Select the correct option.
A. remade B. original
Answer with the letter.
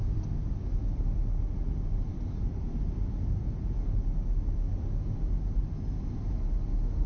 B